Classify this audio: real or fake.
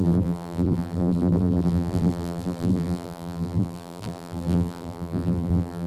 fake